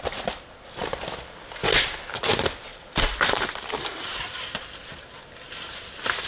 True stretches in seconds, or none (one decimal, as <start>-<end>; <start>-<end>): 0.0-2.7; 4.5-6.3